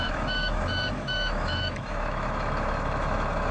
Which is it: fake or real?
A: fake